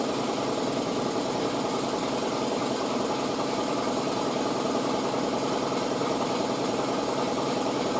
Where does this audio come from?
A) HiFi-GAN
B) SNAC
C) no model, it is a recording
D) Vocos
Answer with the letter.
C